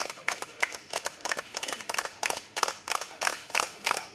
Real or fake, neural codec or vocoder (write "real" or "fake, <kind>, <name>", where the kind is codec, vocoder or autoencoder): fake, autoencoder, DAC-VAE